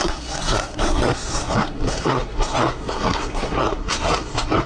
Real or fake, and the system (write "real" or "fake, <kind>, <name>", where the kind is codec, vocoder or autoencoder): fake, codec, SNAC